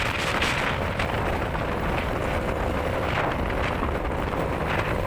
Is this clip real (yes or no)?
yes